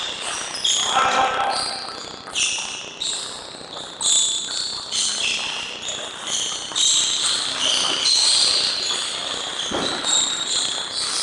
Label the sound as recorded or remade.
recorded